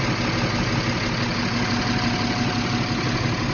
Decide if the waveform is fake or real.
real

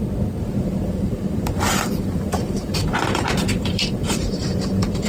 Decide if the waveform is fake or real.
fake